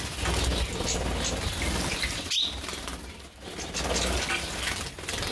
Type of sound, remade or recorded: recorded